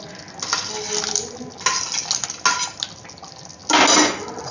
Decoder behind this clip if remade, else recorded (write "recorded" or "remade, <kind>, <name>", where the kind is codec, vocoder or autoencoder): recorded